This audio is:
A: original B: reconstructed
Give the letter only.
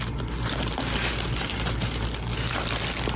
A